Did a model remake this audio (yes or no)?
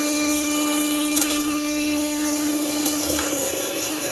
yes